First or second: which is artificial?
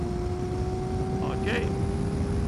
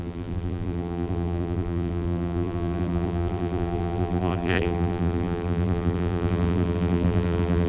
second